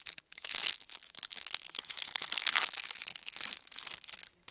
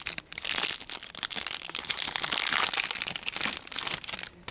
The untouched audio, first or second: second